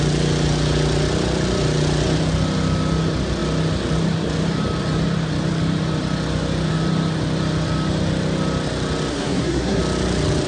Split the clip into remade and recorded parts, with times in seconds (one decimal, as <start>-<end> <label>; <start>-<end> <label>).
0.0-9.1 recorded; 9.1-9.8 remade; 9.8-10.5 recorded